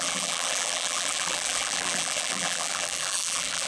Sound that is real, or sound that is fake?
fake